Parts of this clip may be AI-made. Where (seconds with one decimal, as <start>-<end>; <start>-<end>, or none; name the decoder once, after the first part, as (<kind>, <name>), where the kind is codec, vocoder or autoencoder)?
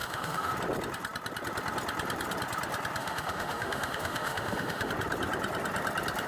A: 0.0-0.5 (autoencoder, DAC-VAE); 3.0-4.9